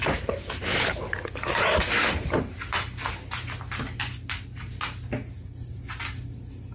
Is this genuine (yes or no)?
yes